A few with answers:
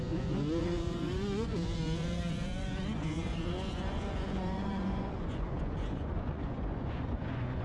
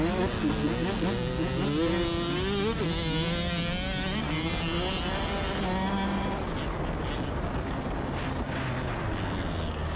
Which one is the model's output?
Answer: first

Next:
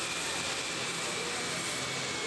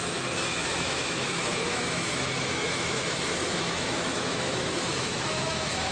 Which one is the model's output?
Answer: second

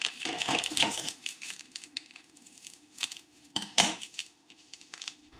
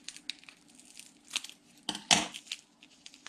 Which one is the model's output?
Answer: first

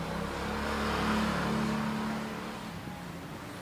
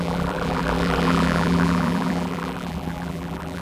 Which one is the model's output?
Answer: second